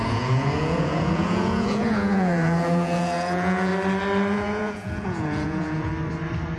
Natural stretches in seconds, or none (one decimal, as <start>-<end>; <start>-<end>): 3.7-4.3; 5.9-6.6